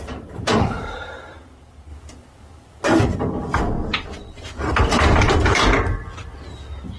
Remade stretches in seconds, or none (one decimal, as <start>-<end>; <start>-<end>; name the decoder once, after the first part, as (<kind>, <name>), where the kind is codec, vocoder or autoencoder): none